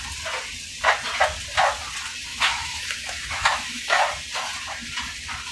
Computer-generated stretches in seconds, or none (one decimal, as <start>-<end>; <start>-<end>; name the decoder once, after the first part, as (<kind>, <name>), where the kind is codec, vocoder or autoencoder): 2.3-4.0 (autoencoder, DAC-VAE)